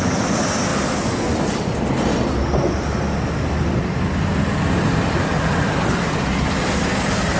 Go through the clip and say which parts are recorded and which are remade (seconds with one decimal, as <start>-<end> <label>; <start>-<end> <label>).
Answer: 0.0-7.4 recorded